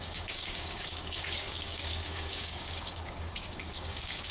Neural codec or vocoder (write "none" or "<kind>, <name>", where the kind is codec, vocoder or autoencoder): codec, DAC